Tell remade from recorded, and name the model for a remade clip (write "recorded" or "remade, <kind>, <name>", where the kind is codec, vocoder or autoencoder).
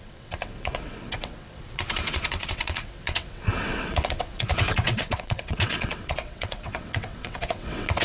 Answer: remade, vocoder, WaveNeXt